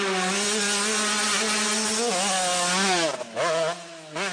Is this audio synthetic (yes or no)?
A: no